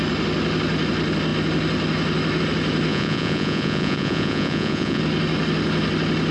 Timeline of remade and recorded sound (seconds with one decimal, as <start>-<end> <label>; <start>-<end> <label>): 0.0-2.9 recorded; 2.9-5.0 remade; 5.0-6.3 recorded